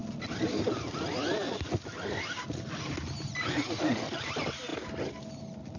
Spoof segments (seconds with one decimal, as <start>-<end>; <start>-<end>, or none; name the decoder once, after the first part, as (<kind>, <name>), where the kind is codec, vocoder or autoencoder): none